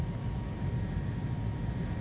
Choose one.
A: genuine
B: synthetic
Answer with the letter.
A